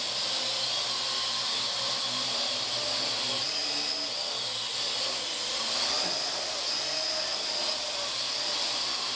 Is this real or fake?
real